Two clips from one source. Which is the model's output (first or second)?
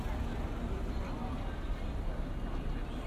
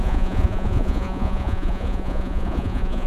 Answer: second